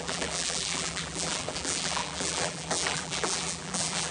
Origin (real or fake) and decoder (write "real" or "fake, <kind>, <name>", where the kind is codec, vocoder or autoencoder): fake, vocoder, BigVGAN v2